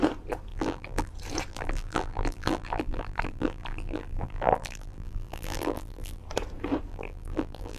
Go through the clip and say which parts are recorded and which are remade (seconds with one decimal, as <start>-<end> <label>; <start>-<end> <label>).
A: 0.0-0.5 recorded; 0.5-1.1 remade; 1.1-1.5 recorded; 1.5-6.2 remade; 6.2-6.9 recorded; 6.9-7.8 remade